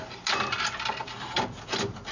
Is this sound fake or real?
real